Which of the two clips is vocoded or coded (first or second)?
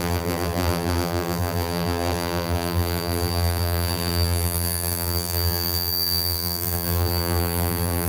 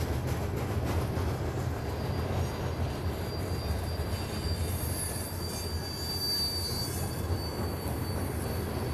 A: first